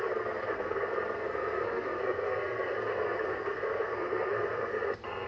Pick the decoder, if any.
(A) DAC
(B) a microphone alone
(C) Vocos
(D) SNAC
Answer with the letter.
D